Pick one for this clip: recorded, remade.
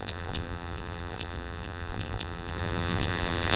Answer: remade